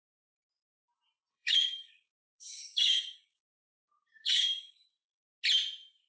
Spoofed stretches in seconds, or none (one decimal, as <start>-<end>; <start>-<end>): 1.3-4.9